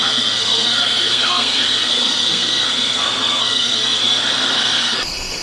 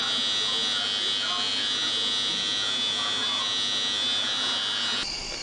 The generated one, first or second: first